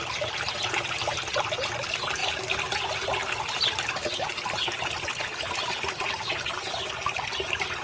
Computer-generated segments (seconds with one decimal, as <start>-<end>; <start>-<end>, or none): none